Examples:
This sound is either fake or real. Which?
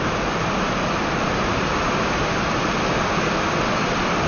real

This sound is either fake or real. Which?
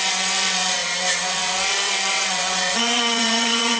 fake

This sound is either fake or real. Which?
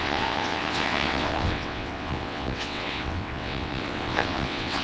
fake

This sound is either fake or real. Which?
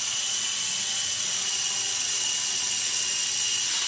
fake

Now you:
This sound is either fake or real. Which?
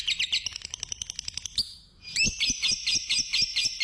real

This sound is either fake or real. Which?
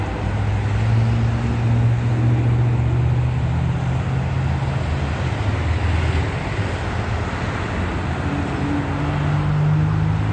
real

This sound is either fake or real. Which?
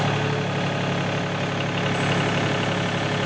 real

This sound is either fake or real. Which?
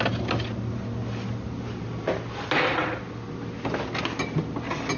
real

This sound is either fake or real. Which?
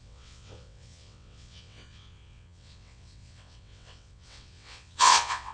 fake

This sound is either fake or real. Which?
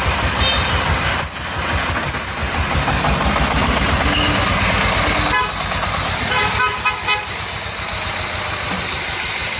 real